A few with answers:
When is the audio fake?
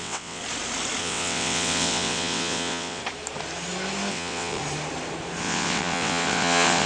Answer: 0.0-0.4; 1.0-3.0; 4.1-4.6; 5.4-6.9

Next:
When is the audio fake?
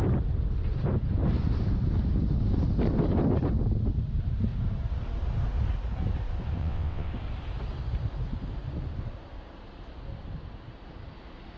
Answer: 6.6-7.1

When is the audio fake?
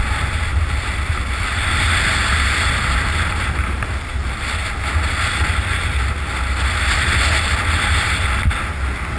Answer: none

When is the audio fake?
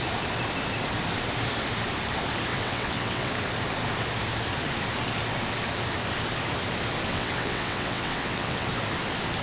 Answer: 2.5-3.3; 7.1-8.7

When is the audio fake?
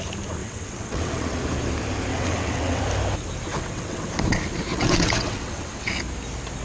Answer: 0.4-1.4; 2.1-2.8; 3.5-4.1; 4.7-5.9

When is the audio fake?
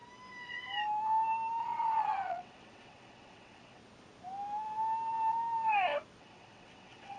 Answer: 1.6-3.8; 6.2-7.2